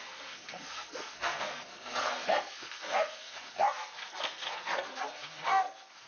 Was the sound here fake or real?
fake